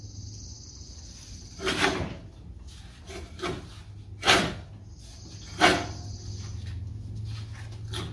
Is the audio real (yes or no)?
yes